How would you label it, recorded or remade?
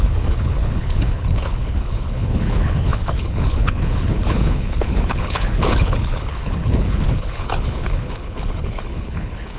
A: remade